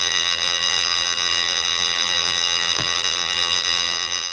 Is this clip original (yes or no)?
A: no